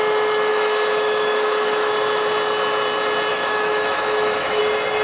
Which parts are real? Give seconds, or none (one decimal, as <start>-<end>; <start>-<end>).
0.0-0.5; 1.9-3.3; 4.6-5.0